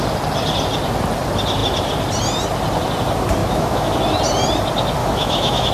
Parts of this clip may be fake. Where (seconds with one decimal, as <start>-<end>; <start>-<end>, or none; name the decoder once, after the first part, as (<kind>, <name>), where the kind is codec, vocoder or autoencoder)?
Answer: 3.4-4.0 (autoencoder, DAC-VAE); 5.0-5.7

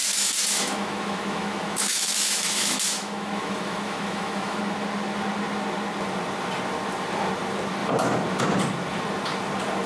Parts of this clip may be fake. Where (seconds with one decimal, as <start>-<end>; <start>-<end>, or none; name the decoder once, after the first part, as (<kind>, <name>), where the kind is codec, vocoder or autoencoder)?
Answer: 0.0-4.6 (autoencoder, DAC-VAE)

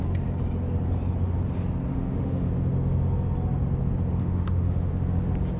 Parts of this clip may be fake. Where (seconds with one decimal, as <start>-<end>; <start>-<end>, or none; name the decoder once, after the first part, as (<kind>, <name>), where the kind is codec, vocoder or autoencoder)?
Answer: 1.9-2.5 (autoencoder, DAC-VAE); 4.2-4.9